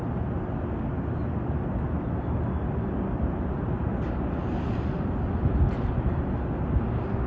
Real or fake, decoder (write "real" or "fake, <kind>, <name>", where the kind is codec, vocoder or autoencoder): real